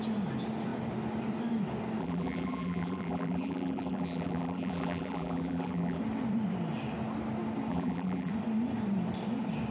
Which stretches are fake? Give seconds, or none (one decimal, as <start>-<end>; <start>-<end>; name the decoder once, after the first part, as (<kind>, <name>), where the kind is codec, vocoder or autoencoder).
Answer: 2.0-6.0 (vocoder, BigVGAN v2); 7.7-8.3